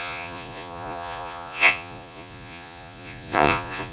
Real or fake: fake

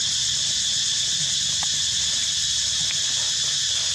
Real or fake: real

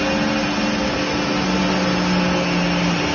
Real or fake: real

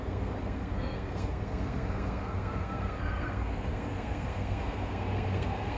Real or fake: fake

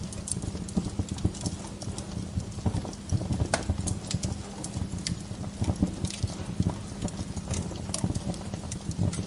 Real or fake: real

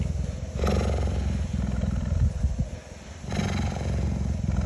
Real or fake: real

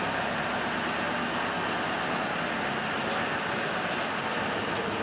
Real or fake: real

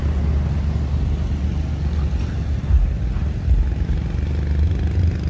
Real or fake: real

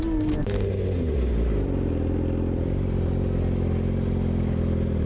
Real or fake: real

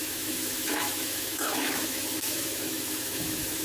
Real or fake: fake